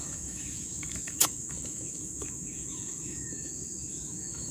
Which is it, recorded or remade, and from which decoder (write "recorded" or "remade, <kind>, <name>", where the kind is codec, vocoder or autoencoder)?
remade, autoencoder, DAC-VAE